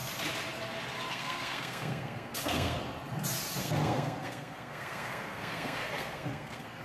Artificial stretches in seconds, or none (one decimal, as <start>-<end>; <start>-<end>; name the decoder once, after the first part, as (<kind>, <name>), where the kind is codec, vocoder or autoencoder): 1.1-2.8 (codec, SNAC); 3.6-6.8